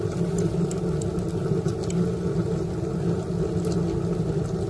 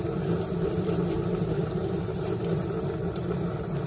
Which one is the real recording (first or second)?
first